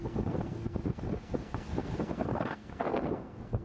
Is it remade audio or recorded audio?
remade